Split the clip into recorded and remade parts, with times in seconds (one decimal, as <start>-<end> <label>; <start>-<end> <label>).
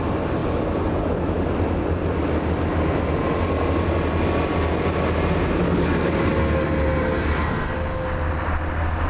0.0-9.1 recorded